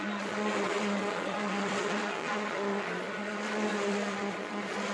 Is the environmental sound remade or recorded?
remade